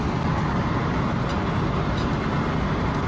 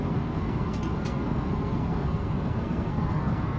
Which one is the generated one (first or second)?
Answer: second